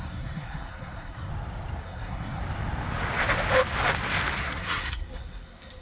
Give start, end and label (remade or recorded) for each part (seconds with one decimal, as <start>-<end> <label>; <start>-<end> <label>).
0.0-1.3 remade; 1.3-1.8 recorded; 1.8-2.4 remade; 2.4-4.4 recorded; 4.4-5.8 remade